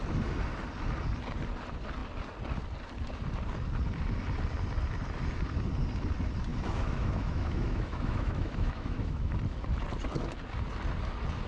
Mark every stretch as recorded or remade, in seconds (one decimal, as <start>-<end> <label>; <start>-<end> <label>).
0.0-6.5 recorded; 6.5-9.3 remade; 9.3-11.5 recorded